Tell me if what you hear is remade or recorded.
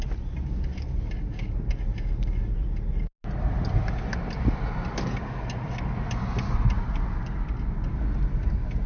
recorded